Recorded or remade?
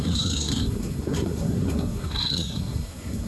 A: remade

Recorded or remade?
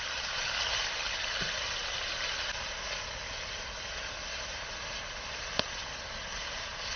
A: recorded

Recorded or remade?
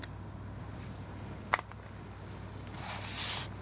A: recorded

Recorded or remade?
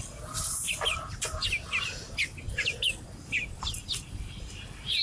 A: recorded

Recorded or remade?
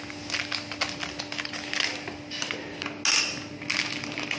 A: recorded